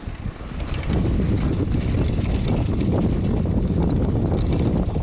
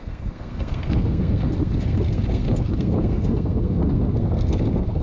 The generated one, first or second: second